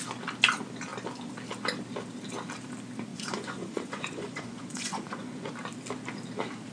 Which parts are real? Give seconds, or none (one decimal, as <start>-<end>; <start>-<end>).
0.0-3.1; 5.5-6.7